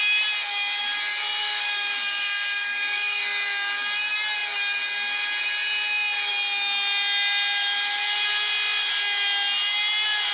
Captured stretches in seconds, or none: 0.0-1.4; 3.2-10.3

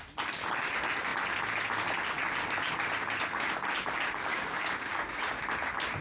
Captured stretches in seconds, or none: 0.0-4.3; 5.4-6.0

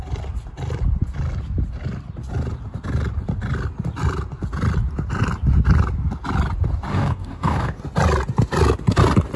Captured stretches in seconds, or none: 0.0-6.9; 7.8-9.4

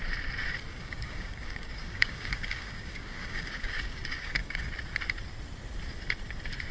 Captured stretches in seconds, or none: 0.0-0.7; 4.7-6.7

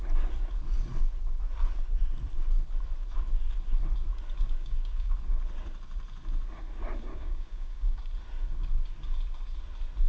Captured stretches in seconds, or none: 0.0-4.6; 5.1-7.1; 8.0-10.1